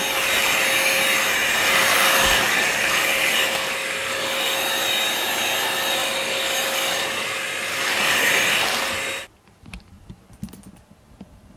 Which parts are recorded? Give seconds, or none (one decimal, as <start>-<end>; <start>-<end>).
0.0-1.9; 4.7-6.0; 7.0-7.7; 8.3-11.6